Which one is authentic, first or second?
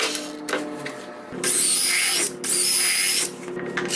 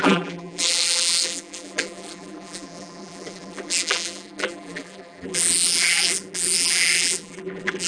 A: first